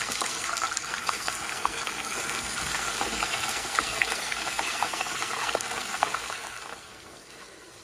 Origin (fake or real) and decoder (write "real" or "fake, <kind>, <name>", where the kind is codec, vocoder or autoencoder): fake, codec, SNAC